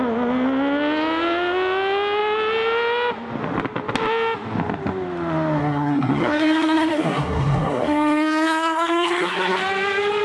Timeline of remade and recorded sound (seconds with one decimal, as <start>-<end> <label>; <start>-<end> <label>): 0.0-5.6 recorded; 5.6-9.6 remade; 9.6-10.2 recorded